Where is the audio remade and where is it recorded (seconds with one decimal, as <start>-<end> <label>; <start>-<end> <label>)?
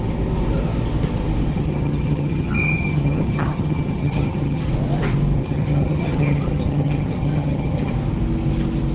0.0-1.5 recorded; 1.5-4.7 remade; 4.7-5.4 recorded; 5.4-7.9 remade; 7.9-8.9 recorded